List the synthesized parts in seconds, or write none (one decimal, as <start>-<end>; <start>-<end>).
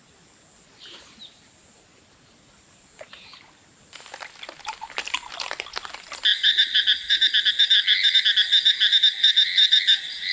none